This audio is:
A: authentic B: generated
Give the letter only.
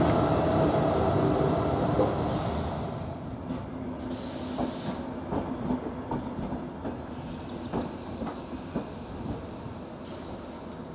A